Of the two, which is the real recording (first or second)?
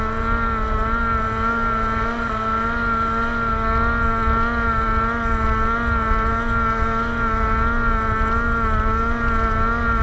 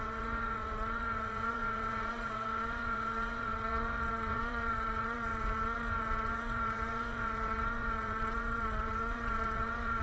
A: first